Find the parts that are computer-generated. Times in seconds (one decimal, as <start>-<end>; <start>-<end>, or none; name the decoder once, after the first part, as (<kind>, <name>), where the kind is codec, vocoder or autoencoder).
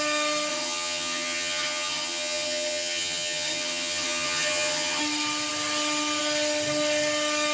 0.5-5.0 (vocoder, HiFi-GAN)